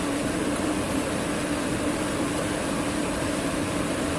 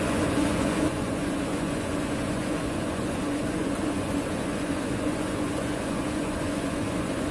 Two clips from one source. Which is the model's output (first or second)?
second